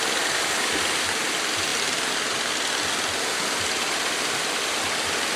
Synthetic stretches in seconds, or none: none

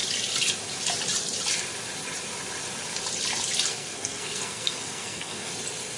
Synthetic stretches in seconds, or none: 3.7-5.5 (codec, SNAC)

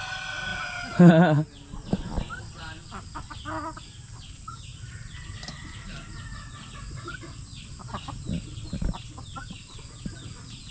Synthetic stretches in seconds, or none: 4.7-6.3 (vocoder, BigVGAN v2)

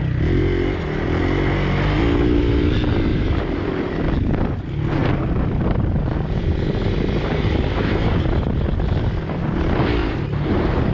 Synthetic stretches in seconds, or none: 3.1-3.7 (vocoder, BigVGAN v2); 5.0-7.5; 10.0-10.9

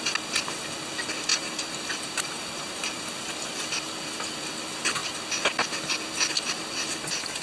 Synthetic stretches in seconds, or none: 1.3-3.1 (vocoder, BigVGAN v2)

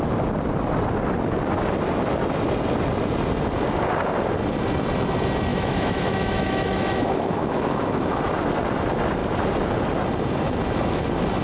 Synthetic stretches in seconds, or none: 5.5-8.2 (autoencoder, DAC-VAE)

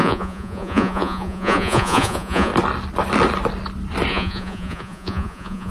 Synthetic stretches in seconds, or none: 0.0-2.5 (vocoder, Vocos); 4.1-5.7

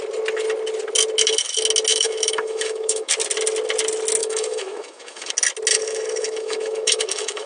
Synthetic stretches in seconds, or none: 1.9-3.1 (autoencoder, DAC-VAE); 4.2-5.3; 5.7-7.5